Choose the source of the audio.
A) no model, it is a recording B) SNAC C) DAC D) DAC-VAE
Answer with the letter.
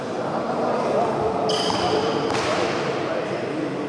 A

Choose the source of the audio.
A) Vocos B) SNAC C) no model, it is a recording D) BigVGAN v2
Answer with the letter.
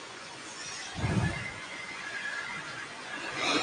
A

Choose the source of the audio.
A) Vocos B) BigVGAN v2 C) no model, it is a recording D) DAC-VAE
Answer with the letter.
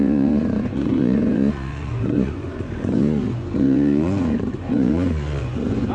A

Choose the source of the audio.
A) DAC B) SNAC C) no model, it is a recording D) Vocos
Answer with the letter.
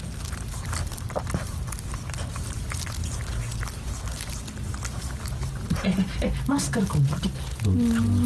C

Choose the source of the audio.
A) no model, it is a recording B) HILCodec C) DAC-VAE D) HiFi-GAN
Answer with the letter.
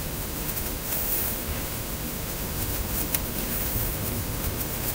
C